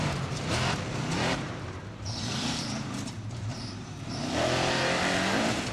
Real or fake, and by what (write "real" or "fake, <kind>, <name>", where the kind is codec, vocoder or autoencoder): fake, vocoder, BigVGAN v2